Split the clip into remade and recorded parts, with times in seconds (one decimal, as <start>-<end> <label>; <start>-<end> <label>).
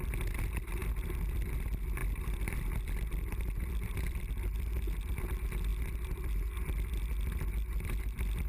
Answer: 0.0-2.0 recorded; 2.0-4.7 remade; 4.7-5.7 recorded; 5.7-6.9 remade; 6.9-8.5 recorded